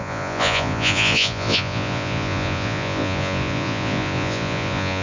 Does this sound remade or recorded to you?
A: remade